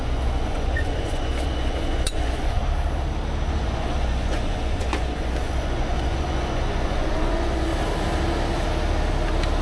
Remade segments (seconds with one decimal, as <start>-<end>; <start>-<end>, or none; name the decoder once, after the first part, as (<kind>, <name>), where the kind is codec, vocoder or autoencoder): 0.0-2.6 (vocoder, Vocos); 3.6-7.7